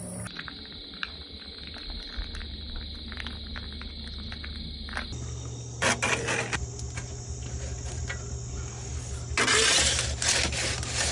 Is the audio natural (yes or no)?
yes